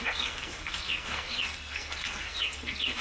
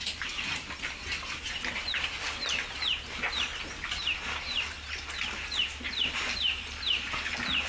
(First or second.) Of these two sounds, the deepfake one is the first